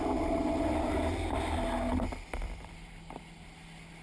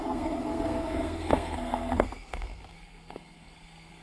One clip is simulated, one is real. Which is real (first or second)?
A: first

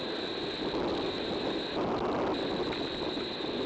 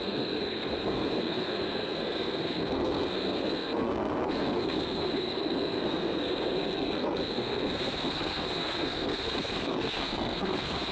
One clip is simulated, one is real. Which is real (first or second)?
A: first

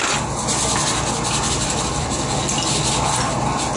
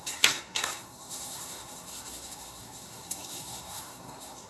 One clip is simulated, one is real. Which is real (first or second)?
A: first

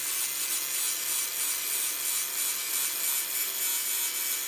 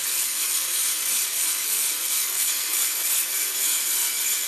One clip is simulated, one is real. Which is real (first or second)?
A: first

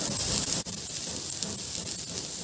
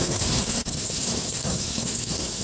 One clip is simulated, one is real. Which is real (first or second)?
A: first